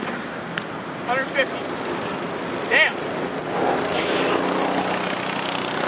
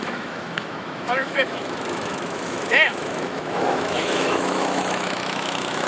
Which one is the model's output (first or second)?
second